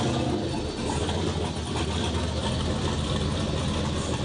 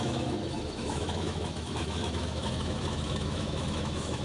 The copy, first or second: second